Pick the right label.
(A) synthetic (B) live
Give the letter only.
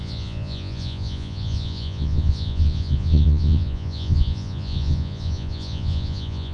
A